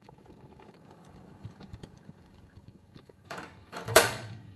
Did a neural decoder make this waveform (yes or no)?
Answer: yes